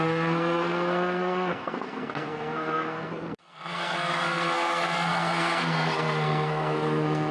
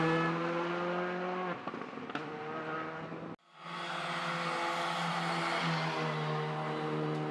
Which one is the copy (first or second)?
first